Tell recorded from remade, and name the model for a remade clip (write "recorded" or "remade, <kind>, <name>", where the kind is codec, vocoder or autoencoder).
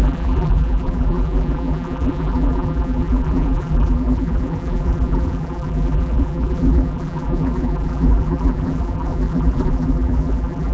remade, vocoder, BigVGAN v2